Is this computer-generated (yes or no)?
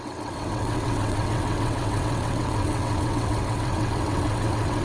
yes